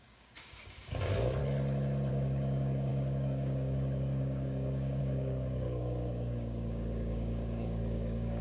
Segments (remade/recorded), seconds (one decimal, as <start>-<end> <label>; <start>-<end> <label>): 0.0-1.4 remade; 1.4-2.1 recorded; 2.1-8.4 remade